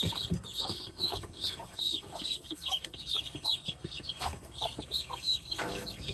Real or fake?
fake